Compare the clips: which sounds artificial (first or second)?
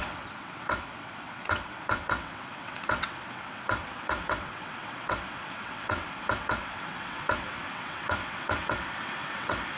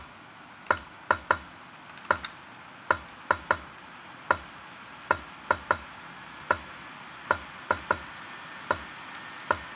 first